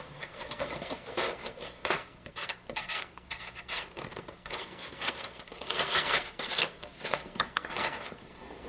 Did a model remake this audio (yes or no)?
yes